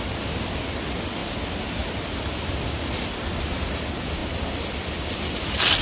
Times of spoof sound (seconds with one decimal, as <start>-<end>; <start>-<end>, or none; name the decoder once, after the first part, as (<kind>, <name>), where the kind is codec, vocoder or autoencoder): none